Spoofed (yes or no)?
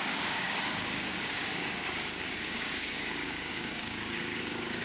yes